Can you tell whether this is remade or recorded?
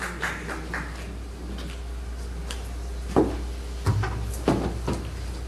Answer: recorded